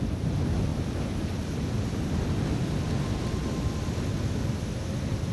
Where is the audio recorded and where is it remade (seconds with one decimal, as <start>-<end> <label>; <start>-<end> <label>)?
0.0-5.3 recorded